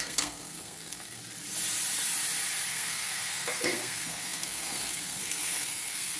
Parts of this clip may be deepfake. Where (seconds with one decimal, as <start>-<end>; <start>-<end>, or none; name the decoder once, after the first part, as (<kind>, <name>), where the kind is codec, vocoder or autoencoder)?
0.0-1.2 (codec, SNAC); 2.7-6.2